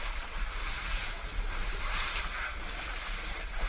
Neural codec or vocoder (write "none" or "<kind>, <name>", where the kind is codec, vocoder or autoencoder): none